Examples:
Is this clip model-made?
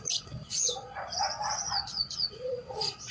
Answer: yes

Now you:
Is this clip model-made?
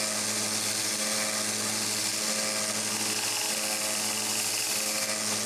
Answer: no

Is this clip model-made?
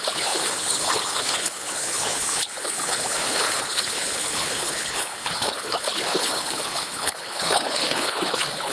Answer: yes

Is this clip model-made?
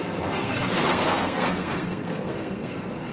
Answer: yes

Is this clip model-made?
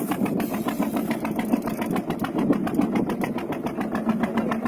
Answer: no